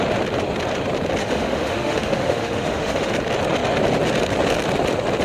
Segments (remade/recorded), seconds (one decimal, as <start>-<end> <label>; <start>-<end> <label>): 0.0-1.2 recorded; 1.2-3.1 remade; 3.1-5.2 recorded